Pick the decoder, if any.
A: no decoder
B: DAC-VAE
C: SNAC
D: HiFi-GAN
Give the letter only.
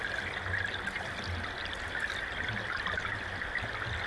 A